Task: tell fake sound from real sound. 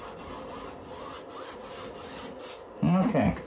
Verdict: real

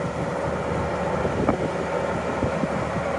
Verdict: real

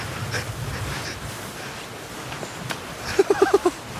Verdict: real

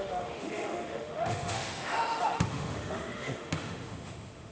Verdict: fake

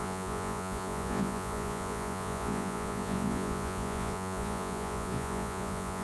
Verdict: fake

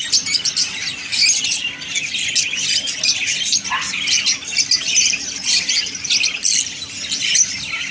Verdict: real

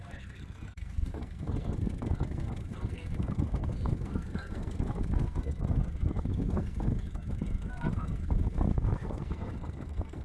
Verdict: fake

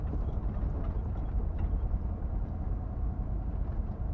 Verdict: real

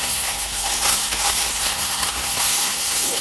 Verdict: fake